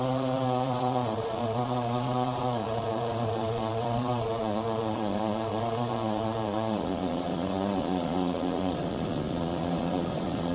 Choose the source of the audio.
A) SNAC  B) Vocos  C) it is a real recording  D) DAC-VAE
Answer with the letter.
B